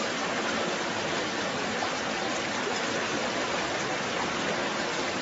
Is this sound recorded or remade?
recorded